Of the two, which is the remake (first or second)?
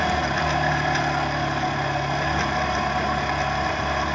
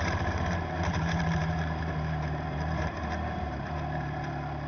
second